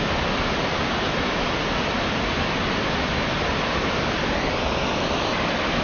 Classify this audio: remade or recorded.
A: recorded